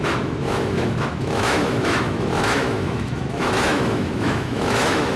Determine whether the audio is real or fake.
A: fake